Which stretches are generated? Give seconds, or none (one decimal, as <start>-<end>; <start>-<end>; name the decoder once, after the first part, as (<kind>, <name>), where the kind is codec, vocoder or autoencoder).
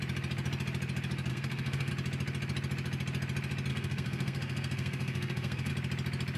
1.3-1.9 (codec, SNAC); 3.7-5.7